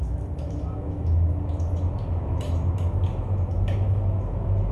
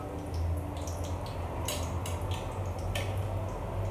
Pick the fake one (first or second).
first